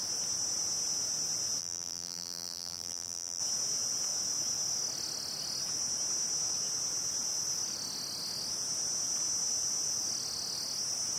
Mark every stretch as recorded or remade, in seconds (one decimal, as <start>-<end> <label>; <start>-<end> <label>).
0.0-1.6 recorded; 1.6-3.4 remade; 3.4-11.2 recorded